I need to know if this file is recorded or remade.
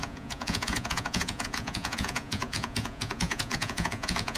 remade